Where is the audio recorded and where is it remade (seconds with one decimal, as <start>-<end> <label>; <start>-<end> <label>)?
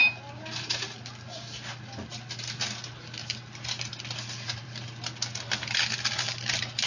0.0-3.2 recorded; 3.2-6.9 remade